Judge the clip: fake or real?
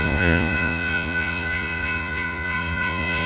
fake